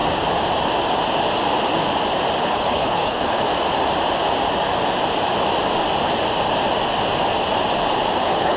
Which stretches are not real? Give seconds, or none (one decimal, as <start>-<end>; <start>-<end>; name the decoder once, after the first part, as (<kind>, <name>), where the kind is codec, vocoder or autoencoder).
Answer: 2.4-3.5 (codec, HILCodec); 8.2-8.6